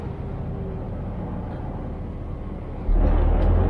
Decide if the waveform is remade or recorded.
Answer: recorded